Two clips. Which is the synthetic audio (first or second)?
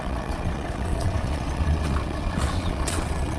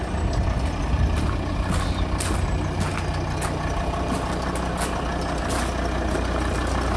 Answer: first